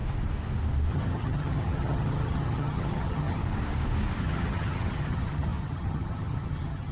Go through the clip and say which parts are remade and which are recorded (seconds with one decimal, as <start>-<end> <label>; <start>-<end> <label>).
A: 0.0-0.9 recorded; 0.9-3.4 remade; 3.4-4.2 recorded; 4.2-6.9 remade